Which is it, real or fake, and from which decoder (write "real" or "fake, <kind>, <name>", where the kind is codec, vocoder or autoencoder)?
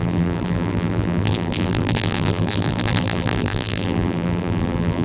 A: fake, vocoder, BigVGAN v2